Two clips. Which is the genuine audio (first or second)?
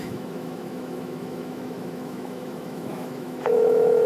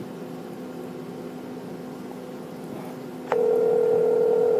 second